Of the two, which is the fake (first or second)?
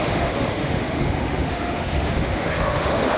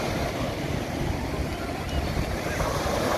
first